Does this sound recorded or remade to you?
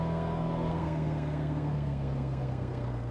remade